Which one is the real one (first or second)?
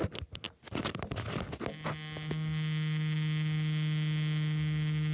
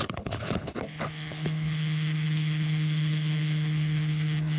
first